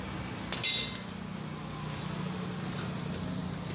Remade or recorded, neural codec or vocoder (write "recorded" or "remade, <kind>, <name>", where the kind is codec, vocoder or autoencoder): recorded